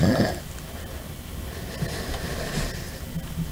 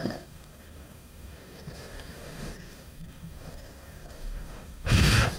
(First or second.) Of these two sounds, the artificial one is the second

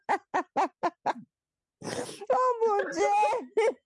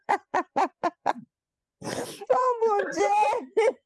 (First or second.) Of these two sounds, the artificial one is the second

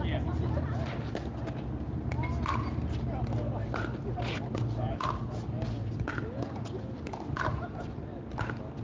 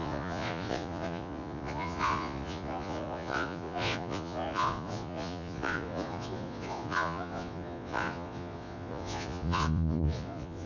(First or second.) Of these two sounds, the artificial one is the second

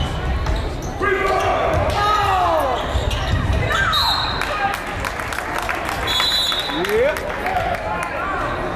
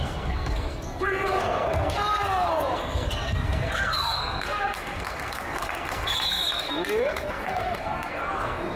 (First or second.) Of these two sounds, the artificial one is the second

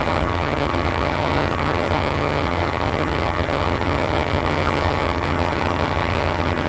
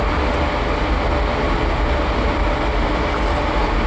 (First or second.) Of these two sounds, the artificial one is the first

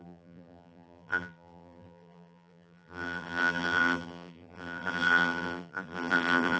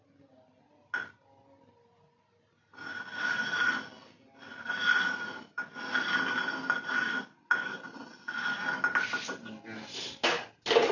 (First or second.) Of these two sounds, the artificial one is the first